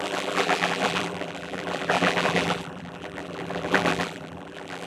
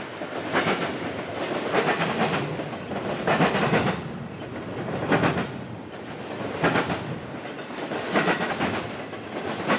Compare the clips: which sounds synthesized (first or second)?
first